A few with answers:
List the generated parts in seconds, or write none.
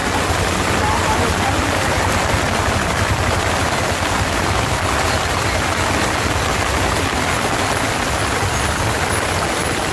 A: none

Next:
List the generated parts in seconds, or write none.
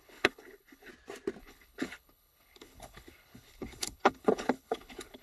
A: 0.0-0.9 (codec, HILCodec); 1.4-5.2